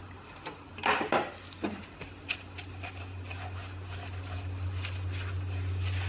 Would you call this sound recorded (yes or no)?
no